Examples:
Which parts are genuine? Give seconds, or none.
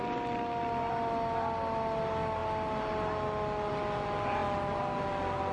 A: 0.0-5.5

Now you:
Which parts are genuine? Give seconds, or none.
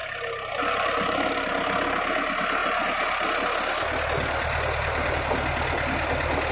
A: 0.0-6.5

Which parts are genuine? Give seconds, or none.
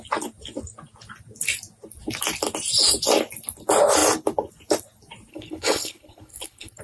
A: 0.0-5.3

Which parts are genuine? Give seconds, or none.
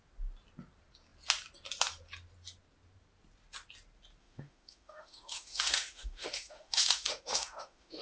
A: 0.0-4.2